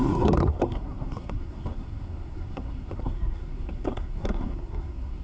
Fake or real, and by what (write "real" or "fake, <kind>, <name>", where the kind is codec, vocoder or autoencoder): fake, codec, SNAC